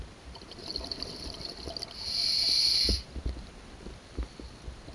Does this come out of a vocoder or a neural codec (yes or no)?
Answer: no